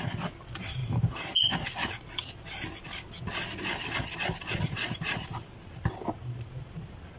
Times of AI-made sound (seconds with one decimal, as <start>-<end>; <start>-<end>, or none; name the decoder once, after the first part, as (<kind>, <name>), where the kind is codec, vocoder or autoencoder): none